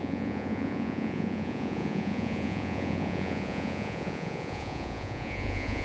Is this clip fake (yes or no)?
yes